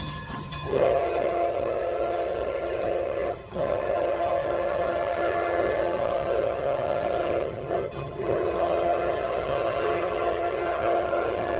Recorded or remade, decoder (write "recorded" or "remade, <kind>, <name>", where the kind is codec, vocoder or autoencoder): remade, vocoder, HiFi-GAN